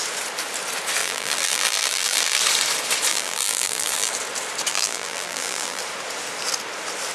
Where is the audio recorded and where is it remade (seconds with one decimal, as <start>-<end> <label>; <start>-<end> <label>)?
0.0-1.0 recorded; 1.0-2.4 remade; 2.4-3.1 recorded; 3.1-4.1 remade; 4.1-4.7 recorded; 4.7-5.8 remade; 5.8-7.1 recorded